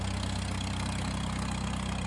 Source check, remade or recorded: recorded